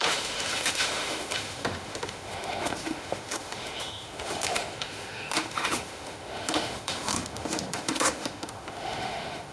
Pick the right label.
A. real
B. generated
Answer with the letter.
B